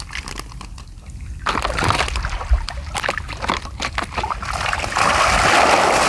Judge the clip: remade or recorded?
recorded